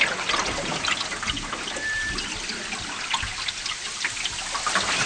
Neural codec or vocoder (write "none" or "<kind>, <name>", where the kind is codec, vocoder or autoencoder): none